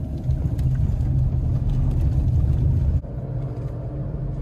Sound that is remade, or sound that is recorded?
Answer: recorded